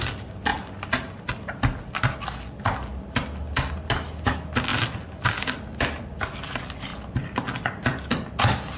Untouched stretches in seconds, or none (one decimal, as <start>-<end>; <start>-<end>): 0.0-8.8